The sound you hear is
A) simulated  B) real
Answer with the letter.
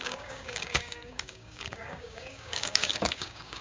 A